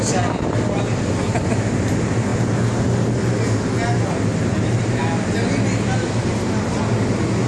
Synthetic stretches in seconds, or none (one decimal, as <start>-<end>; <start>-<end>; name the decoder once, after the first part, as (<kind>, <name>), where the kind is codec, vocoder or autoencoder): none